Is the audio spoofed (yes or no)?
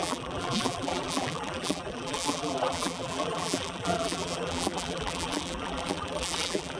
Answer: yes